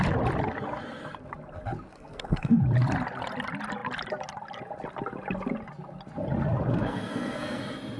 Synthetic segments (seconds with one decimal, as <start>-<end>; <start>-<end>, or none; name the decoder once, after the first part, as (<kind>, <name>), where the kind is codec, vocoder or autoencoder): 1.9-2.6 (codec, SNAC); 6.7-7.6